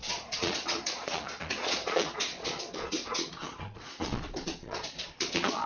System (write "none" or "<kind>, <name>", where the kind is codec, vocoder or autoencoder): vocoder, Vocos